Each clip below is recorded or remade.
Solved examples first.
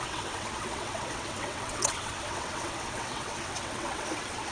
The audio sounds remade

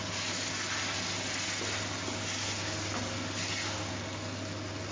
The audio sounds recorded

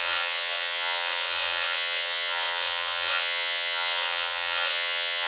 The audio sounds remade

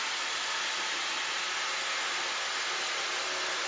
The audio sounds recorded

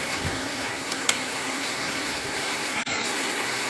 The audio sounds remade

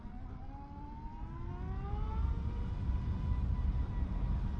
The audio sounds recorded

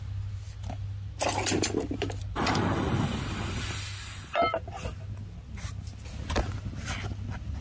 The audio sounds recorded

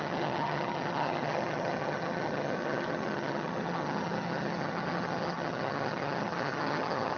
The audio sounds remade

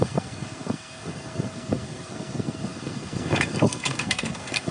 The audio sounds remade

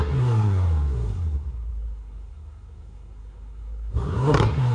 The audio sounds remade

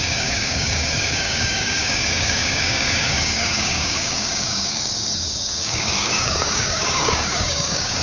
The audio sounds remade